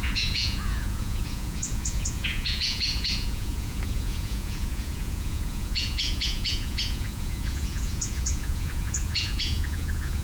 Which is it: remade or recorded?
remade